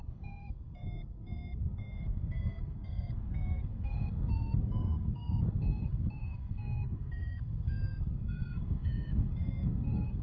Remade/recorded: remade